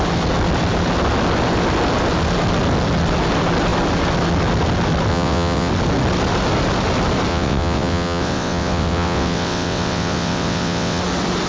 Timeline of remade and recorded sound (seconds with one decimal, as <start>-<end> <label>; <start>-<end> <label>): 0.0-5.1 recorded; 5.1-5.7 remade; 5.7-7.3 recorded; 7.3-11.0 remade; 11.0-11.5 recorded